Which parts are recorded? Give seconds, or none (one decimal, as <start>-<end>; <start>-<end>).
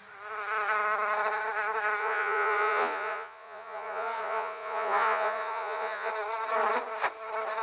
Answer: 0.0-2.0; 6.1-7.6